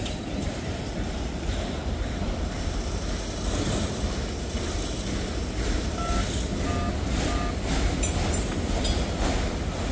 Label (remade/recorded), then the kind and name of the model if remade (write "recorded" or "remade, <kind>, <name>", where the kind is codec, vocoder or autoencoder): recorded